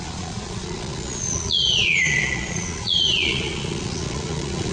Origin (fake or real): fake